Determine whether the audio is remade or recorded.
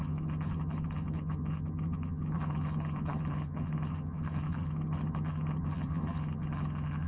remade